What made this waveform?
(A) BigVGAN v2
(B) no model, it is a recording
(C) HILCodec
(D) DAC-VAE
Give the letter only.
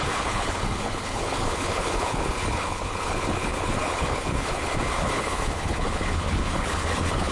C